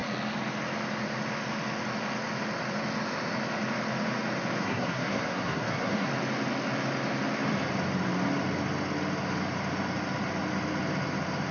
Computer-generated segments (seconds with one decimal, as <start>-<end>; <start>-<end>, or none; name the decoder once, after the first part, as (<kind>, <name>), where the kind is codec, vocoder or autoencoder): 4.6-6.1 (codec, SNAC)